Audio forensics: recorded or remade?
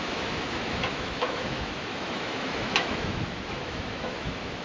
remade